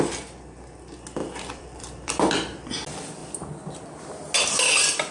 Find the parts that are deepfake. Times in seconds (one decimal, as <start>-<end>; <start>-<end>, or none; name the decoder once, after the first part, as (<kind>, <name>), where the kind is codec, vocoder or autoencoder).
1.2-2.7 (vocoder, BigVGAN v2)